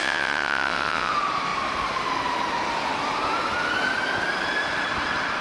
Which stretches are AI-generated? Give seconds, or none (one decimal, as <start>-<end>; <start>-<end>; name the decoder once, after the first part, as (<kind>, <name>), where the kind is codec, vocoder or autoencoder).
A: 0.0-1.1 (vocoder, WaveNeXt)